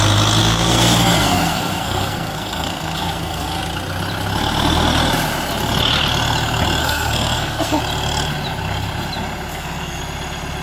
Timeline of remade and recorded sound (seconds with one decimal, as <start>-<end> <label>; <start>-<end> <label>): 0.0-0.4 recorded; 0.4-3.6 remade; 3.6-6.8 recorded; 6.8-7.8 remade; 7.8-9.5 recorded; 9.5-10.0 remade; 10.0-10.6 recorded